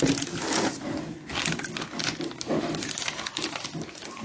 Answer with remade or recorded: recorded